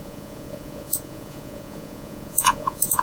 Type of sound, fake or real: fake